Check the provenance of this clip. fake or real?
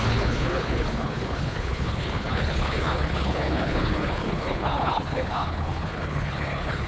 fake